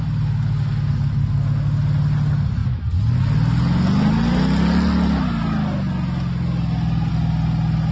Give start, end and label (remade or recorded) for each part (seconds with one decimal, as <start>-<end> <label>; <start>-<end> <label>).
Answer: 0.0-7.9 recorded